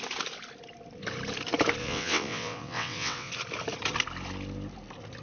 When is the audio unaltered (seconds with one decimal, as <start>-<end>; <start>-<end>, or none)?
0.0-1.8; 3.3-5.2